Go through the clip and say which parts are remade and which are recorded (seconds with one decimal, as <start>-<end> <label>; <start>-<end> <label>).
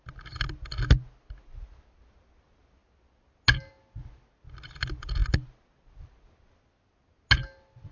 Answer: 0.0-7.9 recorded